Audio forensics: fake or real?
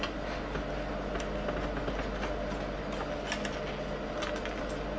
real